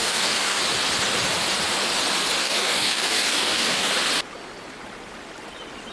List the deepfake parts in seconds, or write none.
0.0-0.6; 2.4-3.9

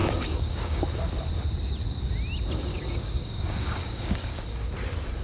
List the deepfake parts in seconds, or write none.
0.0-0.8; 2.7-4.4

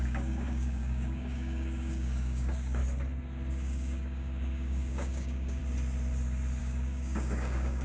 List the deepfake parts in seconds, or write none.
0.0-2.8; 3.5-5.6; 6.6-7.8

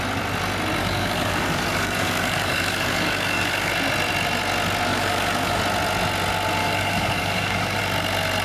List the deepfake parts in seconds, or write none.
0.8-3.7; 4.9-5.6; 6.6-7.8

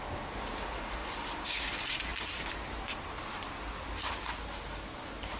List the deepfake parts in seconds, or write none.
none

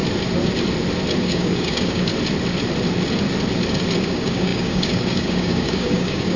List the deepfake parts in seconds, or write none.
1.2-2.1; 4.0-6.4